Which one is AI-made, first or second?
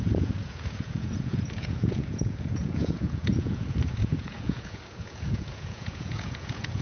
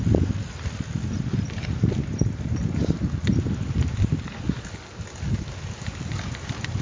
first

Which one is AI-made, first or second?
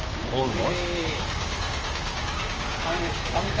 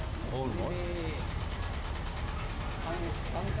first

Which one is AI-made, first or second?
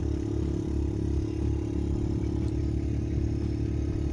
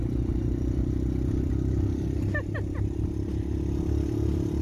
second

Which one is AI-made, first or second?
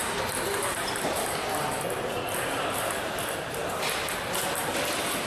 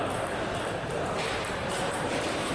second